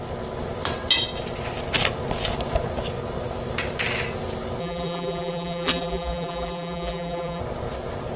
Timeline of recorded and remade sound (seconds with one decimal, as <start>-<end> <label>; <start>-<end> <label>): 0.0-4.6 recorded; 4.6-7.4 remade; 7.4-8.2 recorded